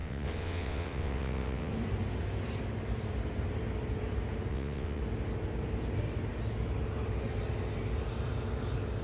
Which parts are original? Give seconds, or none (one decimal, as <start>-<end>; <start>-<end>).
1.7-4.5; 5.0-9.0